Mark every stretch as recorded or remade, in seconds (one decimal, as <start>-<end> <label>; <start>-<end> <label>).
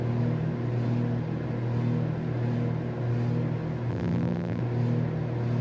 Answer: 0.0-3.9 recorded; 3.9-4.6 remade; 4.6-5.6 recorded